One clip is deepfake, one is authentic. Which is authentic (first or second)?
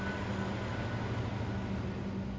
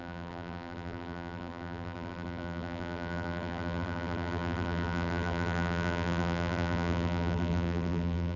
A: first